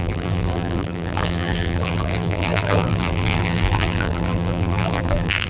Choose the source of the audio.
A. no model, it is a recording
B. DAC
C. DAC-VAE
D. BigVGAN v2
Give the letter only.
D